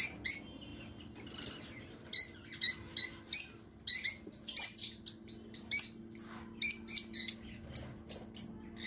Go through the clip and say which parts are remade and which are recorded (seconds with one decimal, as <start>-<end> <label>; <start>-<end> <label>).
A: 0.0-8.9 recorded